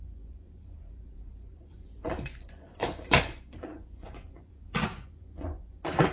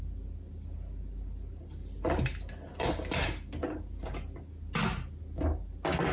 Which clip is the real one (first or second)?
second